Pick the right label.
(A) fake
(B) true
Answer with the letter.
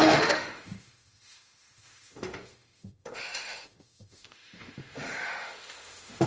A